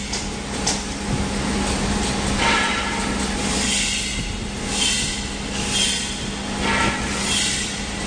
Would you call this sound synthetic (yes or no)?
no